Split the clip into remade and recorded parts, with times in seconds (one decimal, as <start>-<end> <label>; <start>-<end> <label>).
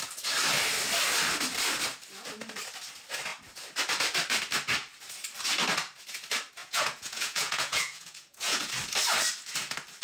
0.0-6.6 recorded; 6.6-8.7 remade; 8.7-10.0 recorded